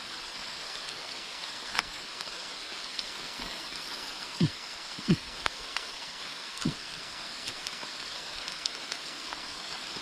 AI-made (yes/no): yes